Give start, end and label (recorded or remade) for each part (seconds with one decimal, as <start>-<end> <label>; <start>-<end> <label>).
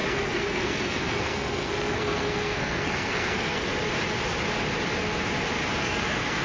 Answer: 0.0-3.7 remade; 3.7-5.8 recorded; 5.8-6.4 remade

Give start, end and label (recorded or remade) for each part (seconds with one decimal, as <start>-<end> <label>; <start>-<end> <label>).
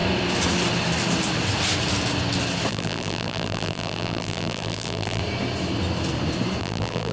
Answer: 0.0-2.7 recorded; 2.7-5.2 remade; 5.2-6.6 recorded; 6.6-7.1 remade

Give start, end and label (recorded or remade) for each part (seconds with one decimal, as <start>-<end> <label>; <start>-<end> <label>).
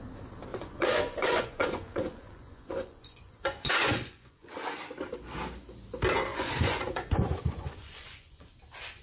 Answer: 0.0-0.5 recorded; 0.5-4.5 remade; 4.5-6.3 recorded; 6.3-8.5 remade; 8.5-9.0 recorded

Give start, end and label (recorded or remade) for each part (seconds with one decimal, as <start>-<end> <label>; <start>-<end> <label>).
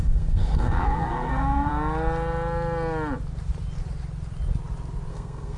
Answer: 0.0-1.7 remade; 1.7-5.1 recorded; 5.1-5.6 remade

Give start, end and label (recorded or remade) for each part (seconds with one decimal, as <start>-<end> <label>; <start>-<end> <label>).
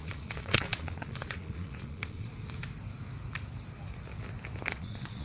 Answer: 0.0-2.3 remade; 2.3-4.7 recorded; 4.7-5.2 remade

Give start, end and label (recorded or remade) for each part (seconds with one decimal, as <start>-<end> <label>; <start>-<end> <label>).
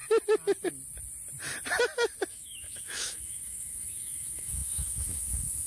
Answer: 0.0-2.3 recorded; 2.3-5.7 remade